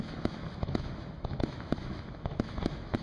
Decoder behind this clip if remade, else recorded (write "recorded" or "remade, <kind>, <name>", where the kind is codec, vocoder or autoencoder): remade, autoencoder, DAC-VAE